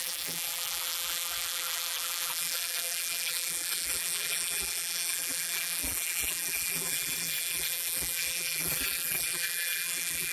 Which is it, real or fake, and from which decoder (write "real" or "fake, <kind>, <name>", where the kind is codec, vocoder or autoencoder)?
fake, vocoder, BigVGAN v2